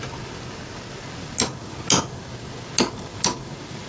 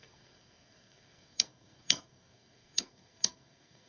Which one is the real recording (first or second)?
first